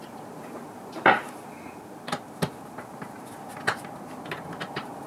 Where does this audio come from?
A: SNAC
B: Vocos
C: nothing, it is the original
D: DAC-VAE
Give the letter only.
C